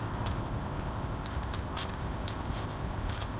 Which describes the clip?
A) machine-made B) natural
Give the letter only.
A